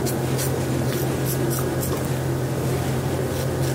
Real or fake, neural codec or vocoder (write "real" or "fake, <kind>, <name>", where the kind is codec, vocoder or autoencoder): real